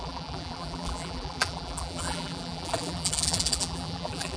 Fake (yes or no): yes